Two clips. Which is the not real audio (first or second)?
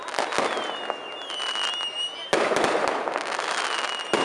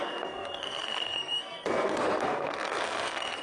second